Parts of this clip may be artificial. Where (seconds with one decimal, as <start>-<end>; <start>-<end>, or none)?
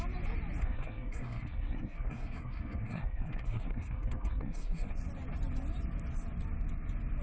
0.6-4.9